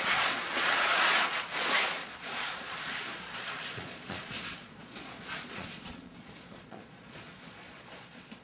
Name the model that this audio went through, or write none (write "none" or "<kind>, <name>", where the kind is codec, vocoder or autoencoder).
vocoder, Vocos